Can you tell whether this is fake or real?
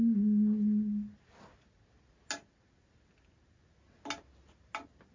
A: real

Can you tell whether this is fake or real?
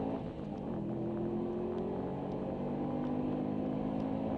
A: real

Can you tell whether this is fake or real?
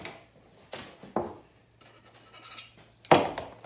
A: real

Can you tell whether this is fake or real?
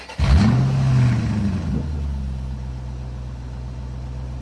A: real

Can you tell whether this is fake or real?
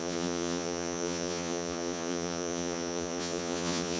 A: fake